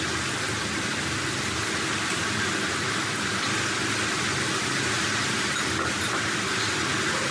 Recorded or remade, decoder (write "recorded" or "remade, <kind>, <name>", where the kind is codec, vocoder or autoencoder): recorded